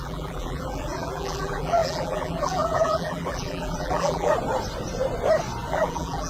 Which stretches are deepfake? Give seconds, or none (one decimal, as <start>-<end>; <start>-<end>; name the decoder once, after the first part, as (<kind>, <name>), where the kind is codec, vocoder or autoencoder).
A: 0.0-4.3 (vocoder, BigVGAN v2); 5.7-6.3